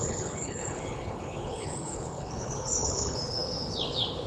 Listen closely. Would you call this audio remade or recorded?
remade